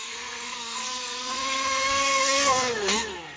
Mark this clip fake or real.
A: fake